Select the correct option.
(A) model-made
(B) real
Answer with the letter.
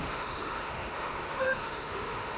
A